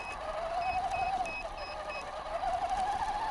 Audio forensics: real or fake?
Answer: real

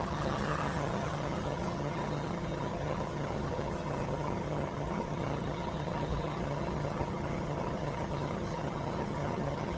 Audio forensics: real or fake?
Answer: fake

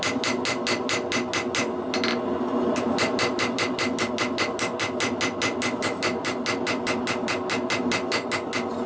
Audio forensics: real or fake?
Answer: real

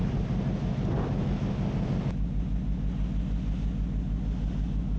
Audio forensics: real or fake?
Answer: real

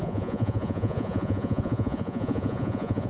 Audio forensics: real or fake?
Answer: fake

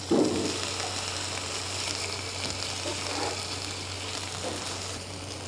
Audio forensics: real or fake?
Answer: fake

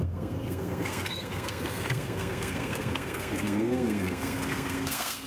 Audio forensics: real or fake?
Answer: fake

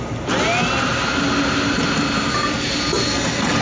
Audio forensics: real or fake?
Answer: real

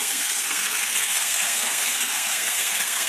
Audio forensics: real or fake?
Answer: fake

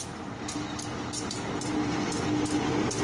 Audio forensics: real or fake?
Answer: real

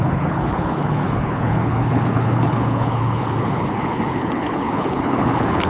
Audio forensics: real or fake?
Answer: fake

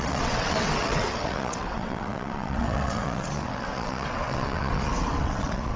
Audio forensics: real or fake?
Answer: fake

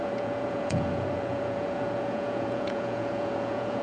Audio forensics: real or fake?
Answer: fake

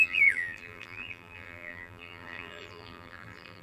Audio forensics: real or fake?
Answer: fake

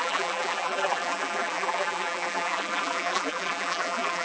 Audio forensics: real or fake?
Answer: fake